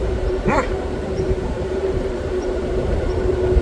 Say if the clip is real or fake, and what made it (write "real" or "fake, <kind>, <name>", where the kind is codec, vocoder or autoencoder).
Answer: fake, vocoder, BigVGAN v2